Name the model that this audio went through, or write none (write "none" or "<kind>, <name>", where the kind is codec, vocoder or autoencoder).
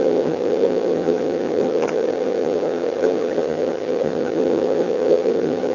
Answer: vocoder, HiFi-GAN